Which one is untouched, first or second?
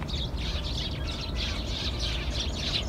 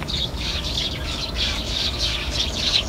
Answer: first